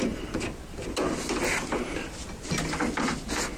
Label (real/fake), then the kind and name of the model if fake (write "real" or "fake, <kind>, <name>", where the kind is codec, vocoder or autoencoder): real